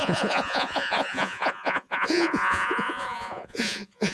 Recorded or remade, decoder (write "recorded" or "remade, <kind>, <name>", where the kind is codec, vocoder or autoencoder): remade, vocoder, Vocos